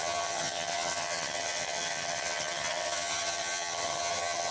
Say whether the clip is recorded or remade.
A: remade